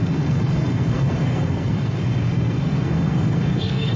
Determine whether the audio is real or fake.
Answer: fake